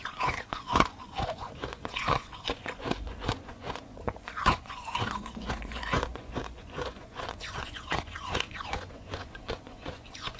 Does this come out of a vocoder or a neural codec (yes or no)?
yes